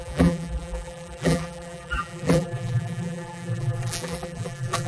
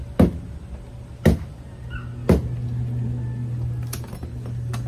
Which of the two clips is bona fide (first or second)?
second